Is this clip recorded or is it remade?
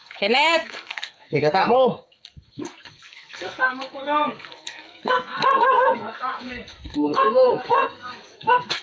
remade